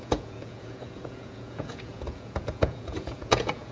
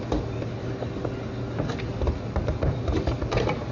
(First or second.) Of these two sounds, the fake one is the first